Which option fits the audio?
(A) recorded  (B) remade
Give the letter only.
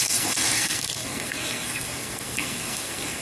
B